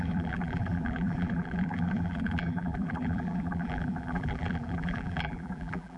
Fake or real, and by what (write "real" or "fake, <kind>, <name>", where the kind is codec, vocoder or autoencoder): fake, vocoder, BigVGAN v2